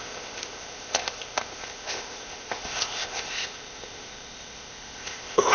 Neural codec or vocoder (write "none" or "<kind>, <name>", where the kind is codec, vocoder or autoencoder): codec, ZipCodec